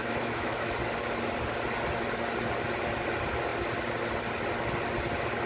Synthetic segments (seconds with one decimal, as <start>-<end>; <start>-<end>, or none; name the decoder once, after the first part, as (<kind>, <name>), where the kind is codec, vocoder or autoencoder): 0.0-0.7 (autoencoder, DAC-VAE)